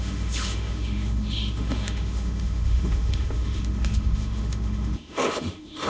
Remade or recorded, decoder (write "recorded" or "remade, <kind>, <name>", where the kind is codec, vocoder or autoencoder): remade, autoencoder, DAC-VAE